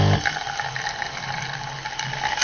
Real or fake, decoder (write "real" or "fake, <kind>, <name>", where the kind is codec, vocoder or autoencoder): real